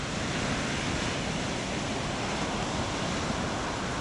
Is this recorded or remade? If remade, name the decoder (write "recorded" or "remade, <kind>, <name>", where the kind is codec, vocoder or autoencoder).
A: recorded